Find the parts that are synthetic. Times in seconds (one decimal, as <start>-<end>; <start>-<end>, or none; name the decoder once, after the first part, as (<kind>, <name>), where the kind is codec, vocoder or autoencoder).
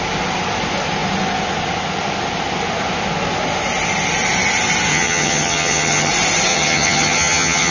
4.9-6.1 (vocoder, HiFi-GAN); 6.5-7.7